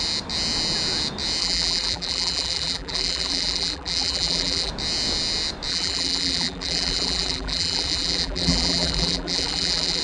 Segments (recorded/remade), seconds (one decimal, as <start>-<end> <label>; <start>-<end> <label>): 0.0-1.4 recorded; 1.4-4.7 remade; 4.7-5.7 recorded; 5.7-10.0 remade